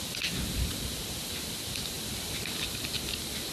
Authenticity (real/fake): real